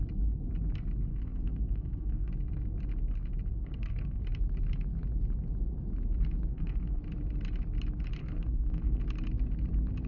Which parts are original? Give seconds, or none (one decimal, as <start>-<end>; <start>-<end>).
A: 0.0-1.1; 2.3-3.5; 4.2-6.5; 7.0-8.2; 9.0-10.1